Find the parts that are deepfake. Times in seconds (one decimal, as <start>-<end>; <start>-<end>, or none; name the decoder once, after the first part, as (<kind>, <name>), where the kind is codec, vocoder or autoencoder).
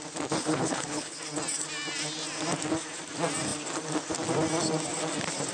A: 0.4-1.2 (codec, HILCodec)